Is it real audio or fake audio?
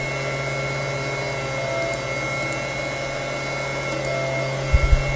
real